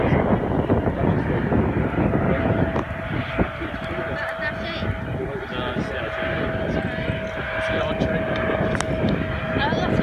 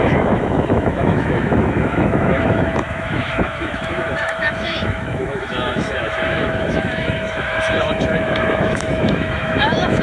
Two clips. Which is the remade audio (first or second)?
second